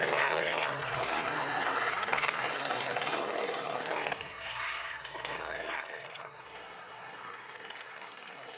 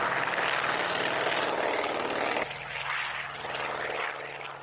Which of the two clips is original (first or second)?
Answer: second